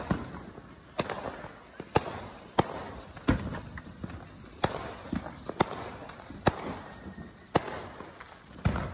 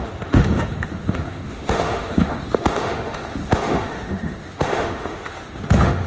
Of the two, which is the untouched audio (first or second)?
first